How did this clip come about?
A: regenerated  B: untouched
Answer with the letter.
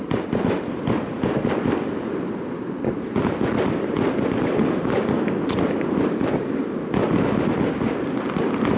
B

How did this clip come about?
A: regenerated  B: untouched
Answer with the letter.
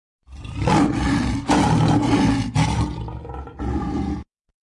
B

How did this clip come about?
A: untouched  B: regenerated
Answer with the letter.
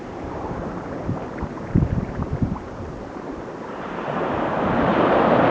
B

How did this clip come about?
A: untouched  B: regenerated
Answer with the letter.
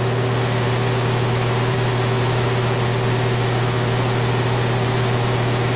A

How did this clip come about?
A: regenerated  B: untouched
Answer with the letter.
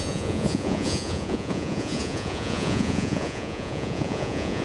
A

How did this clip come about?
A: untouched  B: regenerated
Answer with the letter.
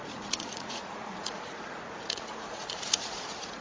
B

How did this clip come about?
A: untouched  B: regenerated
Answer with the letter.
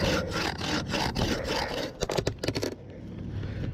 A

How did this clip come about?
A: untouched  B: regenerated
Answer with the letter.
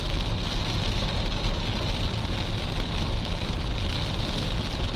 A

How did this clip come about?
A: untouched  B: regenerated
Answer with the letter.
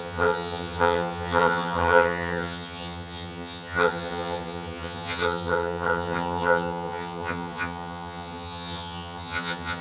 B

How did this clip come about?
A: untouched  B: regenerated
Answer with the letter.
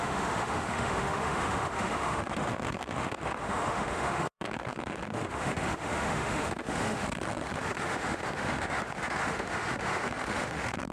B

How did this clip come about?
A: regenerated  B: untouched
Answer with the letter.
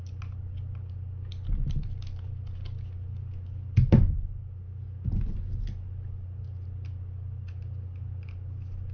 B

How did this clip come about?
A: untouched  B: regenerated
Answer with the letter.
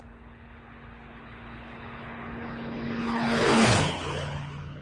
B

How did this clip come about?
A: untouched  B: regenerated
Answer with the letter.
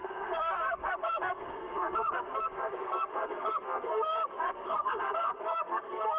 B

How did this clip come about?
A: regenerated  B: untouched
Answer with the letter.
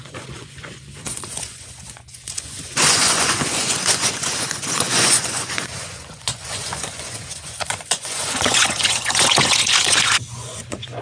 A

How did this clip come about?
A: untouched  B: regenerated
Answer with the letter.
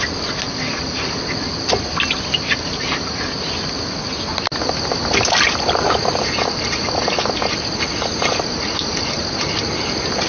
A